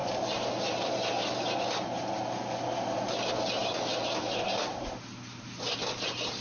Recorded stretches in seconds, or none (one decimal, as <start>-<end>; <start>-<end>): 0.0-6.4